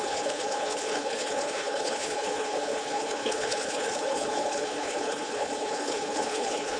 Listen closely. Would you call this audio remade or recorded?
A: remade